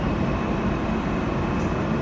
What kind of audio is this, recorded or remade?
recorded